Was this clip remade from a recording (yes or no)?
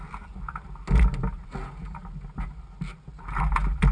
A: no